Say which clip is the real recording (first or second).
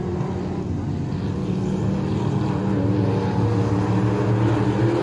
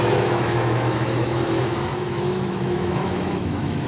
first